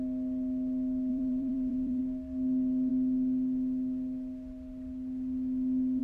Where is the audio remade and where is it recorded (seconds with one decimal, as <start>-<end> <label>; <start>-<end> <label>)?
0.0-1.1 recorded; 1.1-2.0 remade; 2.0-6.0 recorded